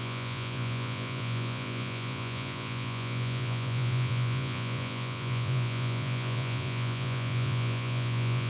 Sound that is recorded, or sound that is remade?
remade